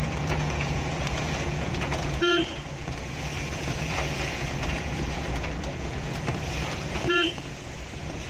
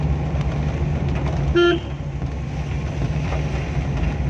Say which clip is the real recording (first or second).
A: second